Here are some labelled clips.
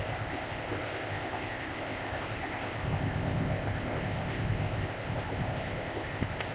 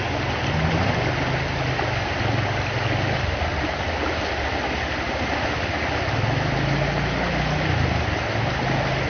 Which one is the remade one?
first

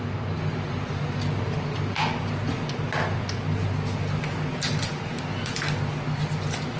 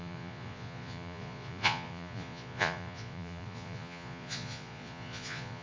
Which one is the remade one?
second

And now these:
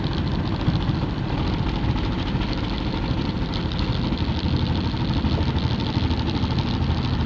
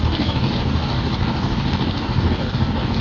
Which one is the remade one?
second